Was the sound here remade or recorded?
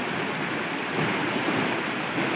recorded